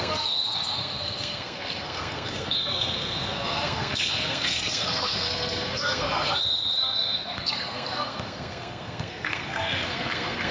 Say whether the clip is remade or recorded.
remade